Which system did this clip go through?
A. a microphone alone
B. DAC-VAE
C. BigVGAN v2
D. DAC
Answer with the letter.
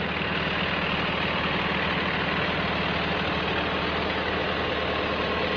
A